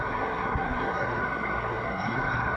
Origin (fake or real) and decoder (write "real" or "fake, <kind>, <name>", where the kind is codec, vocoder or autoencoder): fake, codec, SNAC